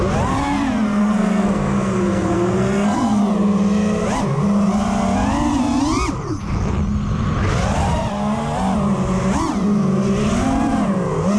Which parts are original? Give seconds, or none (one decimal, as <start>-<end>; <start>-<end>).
0.0-1.0; 3.2-11.4